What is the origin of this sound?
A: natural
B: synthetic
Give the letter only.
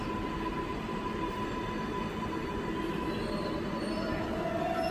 A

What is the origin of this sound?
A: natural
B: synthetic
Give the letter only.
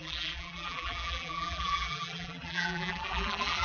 B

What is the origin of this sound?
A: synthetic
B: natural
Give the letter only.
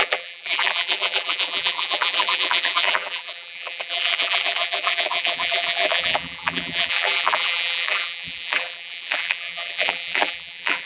A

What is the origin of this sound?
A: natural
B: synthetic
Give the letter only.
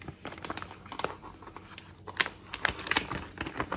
A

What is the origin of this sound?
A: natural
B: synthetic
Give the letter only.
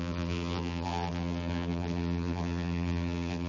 B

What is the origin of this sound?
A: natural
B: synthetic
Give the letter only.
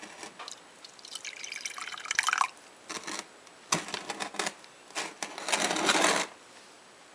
A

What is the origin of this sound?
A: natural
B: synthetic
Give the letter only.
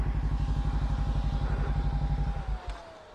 A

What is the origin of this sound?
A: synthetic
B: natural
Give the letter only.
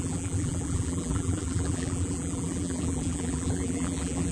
A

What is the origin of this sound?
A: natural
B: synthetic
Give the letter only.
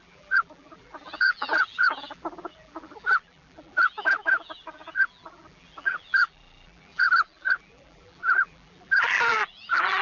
B